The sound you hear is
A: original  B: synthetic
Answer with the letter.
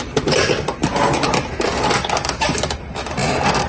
A